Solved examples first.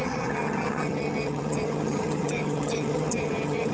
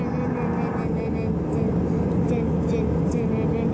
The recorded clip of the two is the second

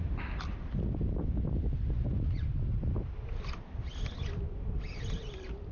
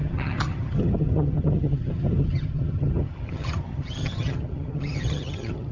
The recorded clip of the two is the first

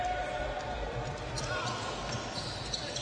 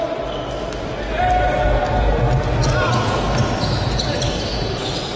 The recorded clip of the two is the second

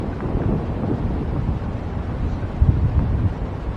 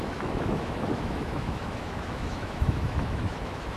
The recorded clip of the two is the first